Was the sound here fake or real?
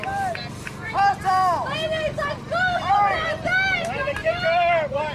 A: real